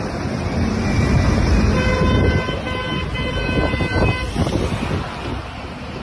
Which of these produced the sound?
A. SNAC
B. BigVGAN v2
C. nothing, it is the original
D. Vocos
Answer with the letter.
C